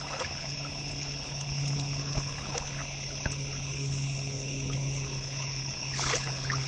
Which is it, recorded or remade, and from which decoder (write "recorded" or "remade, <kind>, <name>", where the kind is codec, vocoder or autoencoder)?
remade, codec, HILCodec